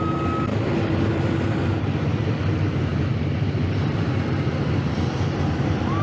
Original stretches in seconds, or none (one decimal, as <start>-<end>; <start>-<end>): 0.0-0.5; 2.3-2.9